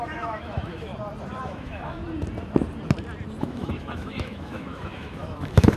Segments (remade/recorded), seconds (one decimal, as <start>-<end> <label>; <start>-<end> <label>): 0.0-0.9 remade; 0.9-1.4 recorded; 1.4-2.0 remade; 2.0-3.4 recorded; 3.4-5.8 remade